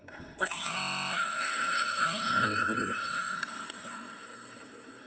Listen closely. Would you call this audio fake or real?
fake